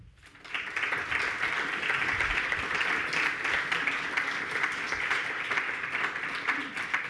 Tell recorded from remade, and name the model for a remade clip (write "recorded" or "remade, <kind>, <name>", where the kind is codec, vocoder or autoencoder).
recorded